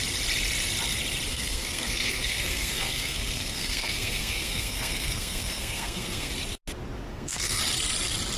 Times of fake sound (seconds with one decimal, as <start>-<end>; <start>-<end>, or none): 1.3-6.3; 7.1-7.6